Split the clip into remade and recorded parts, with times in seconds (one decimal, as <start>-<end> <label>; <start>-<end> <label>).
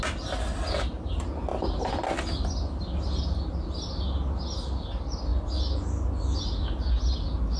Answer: 0.0-7.6 recorded